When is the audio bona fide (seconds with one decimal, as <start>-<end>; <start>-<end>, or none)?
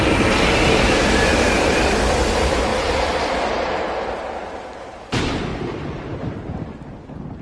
2.7-3.5; 5.5-6.0